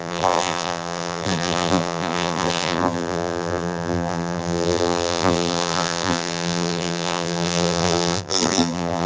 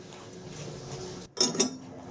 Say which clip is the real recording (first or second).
second